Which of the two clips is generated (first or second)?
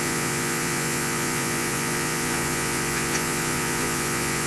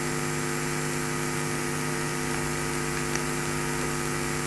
first